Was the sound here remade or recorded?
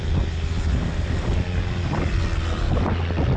recorded